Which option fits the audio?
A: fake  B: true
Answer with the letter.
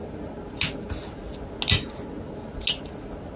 B